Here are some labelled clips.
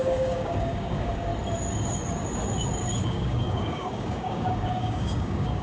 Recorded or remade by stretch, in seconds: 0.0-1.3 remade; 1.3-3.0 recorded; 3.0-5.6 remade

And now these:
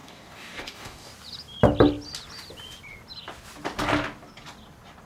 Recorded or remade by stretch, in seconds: 0.0-1.1 remade; 1.1-5.1 recorded

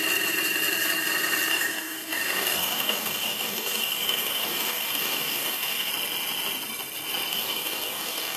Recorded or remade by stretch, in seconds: 0.0-1.5 recorded; 1.5-5.9 remade; 5.9-7.3 recorded; 7.3-8.4 remade

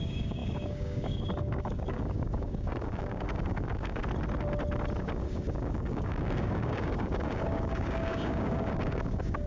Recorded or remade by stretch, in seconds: 0.0-4.0 remade; 4.0-5.0 recorded; 5.0-9.5 remade

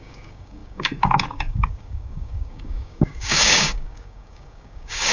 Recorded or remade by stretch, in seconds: 0.0-5.1 remade

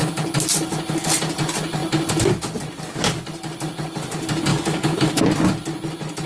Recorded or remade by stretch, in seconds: 0.0-4.5 recorded; 4.5-5.2 remade; 5.2-6.3 recorded